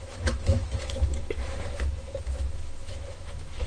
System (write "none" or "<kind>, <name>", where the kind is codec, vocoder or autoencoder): autoencoder, DAC-VAE